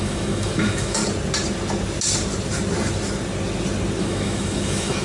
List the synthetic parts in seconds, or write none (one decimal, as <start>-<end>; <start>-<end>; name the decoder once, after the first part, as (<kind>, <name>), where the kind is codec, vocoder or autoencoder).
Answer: 0.0-1.0 (autoencoder, DAC-VAE); 4.0-5.0